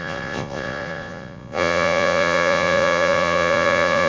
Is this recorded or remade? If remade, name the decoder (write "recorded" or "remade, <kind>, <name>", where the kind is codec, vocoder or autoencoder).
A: remade, vocoder, Vocos